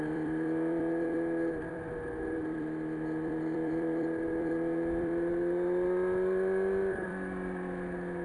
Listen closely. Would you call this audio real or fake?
fake